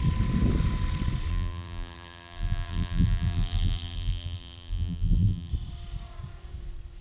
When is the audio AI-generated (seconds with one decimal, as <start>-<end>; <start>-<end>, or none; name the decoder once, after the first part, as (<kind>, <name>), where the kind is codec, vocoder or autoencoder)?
1.3-5.5 (vocoder, BigVGAN v2)